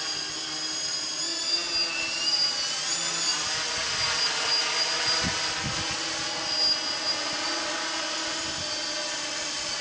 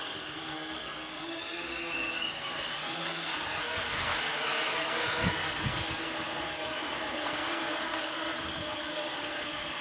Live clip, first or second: first